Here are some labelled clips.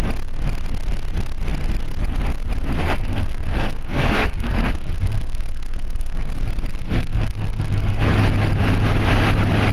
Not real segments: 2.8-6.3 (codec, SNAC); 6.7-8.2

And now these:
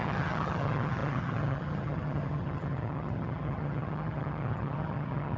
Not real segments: 0.0-5.4 (vocoder, HiFi-GAN)